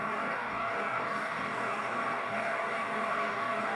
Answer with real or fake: fake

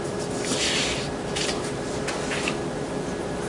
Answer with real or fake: real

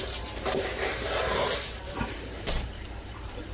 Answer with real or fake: fake